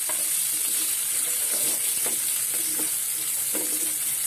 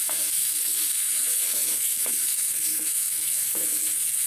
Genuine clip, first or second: first